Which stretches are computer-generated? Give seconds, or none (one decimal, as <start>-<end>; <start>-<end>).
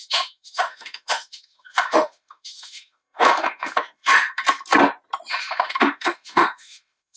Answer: 0.0-4.4; 5.3-7.2